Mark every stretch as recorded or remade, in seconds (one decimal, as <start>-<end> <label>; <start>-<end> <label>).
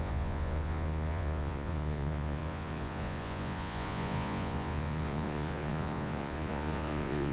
0.0-7.3 remade